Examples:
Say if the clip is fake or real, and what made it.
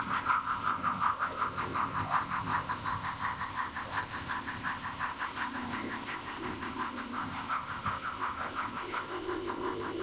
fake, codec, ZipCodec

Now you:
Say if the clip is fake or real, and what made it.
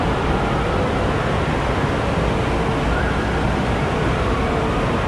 real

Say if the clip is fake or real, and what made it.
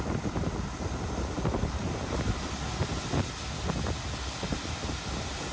real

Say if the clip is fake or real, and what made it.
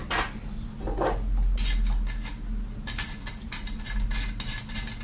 real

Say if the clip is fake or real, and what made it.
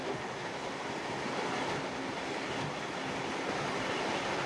real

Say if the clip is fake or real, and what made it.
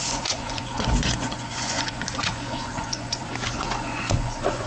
fake, vocoder, Vocos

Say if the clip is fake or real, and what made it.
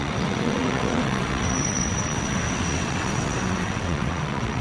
fake, vocoder, WaveNeXt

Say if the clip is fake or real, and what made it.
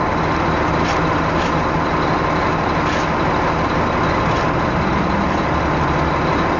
real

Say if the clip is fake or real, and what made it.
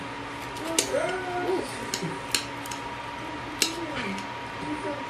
real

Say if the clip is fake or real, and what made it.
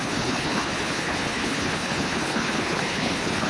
fake, codec, HILCodec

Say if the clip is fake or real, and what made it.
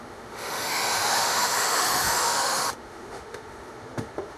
fake, autoencoder, DAC-VAE